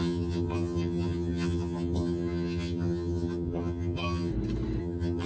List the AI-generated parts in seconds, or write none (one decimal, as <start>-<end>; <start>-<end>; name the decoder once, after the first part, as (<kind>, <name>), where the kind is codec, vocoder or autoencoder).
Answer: 0.0-4.3 (vocoder, HiFi-GAN); 4.8-5.3